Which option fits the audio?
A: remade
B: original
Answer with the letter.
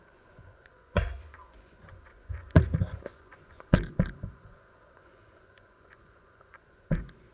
A